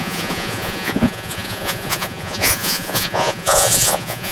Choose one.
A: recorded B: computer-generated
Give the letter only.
B